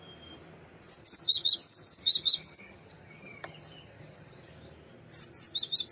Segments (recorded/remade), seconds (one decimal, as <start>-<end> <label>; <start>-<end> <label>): 0.0-1.0 recorded; 1.0-4.5 remade; 4.5-5.9 recorded